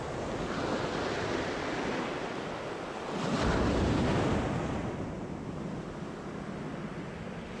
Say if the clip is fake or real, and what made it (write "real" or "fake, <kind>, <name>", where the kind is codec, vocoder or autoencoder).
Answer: real